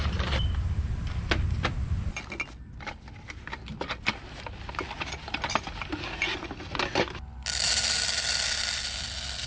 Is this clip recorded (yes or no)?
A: yes